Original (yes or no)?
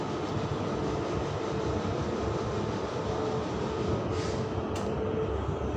yes